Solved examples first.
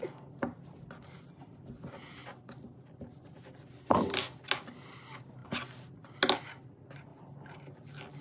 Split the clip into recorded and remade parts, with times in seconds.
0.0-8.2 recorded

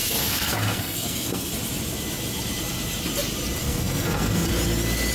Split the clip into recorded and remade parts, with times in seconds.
0.0-1.5 remade; 1.5-3.6 recorded; 3.6-4.5 remade; 4.5-5.1 recorded

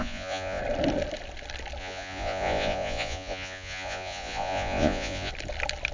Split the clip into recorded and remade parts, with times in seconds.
0.0-0.6 remade; 0.6-1.8 recorded; 1.8-5.3 remade; 5.3-5.9 recorded

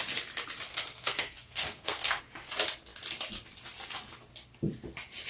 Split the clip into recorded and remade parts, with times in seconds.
0.0-0.7 recorded; 0.7-2.2 remade; 2.2-5.3 recorded

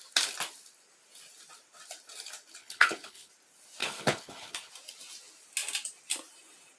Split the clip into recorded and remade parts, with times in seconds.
0.0-2.6 recorded; 2.6-3.3 remade; 3.3-3.8 recorded; 3.8-4.7 remade; 4.7-6.8 recorded

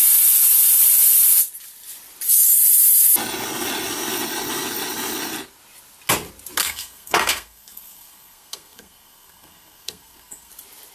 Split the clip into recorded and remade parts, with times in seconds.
0.0-6.6 recorded; 6.6-10.5 remade; 10.5-10.9 recorded

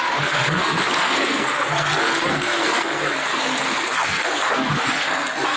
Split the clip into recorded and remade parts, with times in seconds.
0.0-5.6 remade

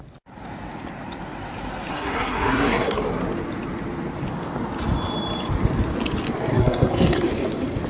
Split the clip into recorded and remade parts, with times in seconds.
0.0-1.9 recorded; 1.9-3.0 remade; 3.0-6.5 recorded; 6.5-7.3 remade; 7.3-7.9 recorded